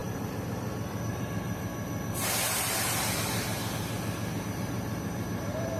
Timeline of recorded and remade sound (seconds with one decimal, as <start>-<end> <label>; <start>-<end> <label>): 0.0-1.7 remade; 1.7-4.4 recorded; 4.4-5.8 remade